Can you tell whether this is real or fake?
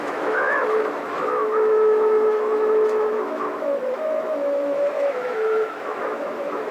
fake